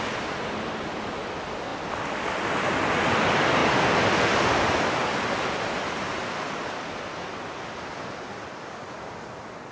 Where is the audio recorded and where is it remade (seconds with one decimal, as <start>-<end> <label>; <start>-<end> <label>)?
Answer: 0.0-9.7 recorded